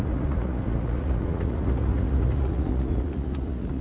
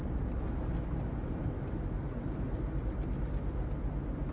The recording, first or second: second